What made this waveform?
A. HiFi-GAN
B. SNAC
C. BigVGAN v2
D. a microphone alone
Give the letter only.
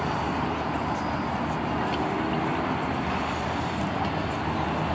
D